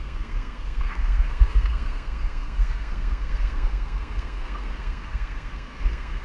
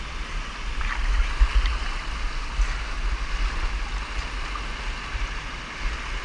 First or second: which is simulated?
first